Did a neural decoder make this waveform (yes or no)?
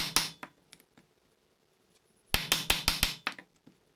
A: no